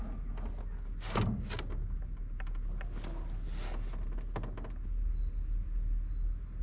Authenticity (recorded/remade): recorded